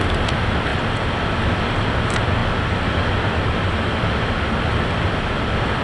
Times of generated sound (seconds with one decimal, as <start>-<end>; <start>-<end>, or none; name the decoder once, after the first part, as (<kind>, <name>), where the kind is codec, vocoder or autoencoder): none